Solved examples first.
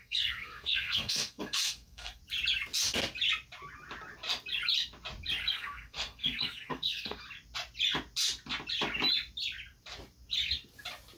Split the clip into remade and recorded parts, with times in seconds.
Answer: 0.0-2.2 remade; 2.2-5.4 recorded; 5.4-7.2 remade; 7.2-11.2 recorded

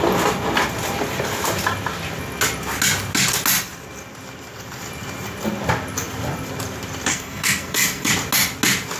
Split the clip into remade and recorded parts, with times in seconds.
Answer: 0.0-7.1 recorded; 7.1-8.1 remade; 8.1-9.0 recorded

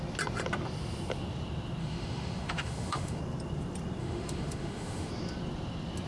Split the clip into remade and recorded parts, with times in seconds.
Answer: 0.0-1.8 recorded; 1.8-3.2 remade; 3.2-4.0 recorded; 4.0-5.1 remade; 5.1-6.1 recorded